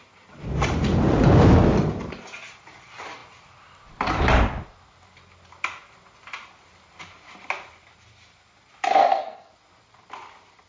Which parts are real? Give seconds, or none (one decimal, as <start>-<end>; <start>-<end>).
0.0-9.0; 9.5-10.7